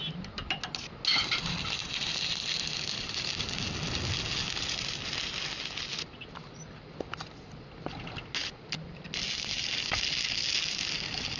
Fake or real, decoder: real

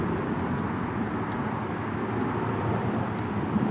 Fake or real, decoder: real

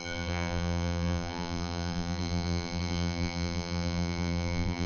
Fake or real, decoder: fake, vocoder, BigVGAN v2